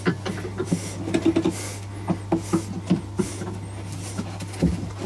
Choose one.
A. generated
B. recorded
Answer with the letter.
B